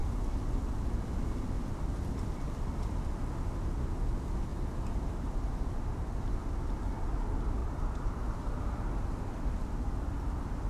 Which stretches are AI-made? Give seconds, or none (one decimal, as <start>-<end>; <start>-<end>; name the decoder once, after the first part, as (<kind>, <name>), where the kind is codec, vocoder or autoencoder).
4.5-5.3 (vocoder, BigVGAN v2); 7.6-8.6